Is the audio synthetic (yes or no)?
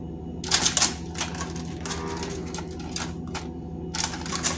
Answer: no